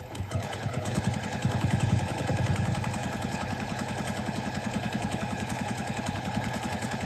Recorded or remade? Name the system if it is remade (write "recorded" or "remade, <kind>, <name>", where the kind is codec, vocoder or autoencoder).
remade, codec, HILCodec